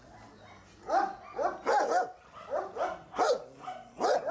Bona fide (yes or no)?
yes